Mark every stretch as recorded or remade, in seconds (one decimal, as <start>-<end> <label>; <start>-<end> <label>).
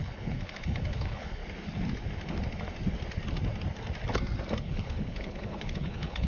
0.0-1.4 remade; 1.4-4.6 recorded; 4.6-6.3 remade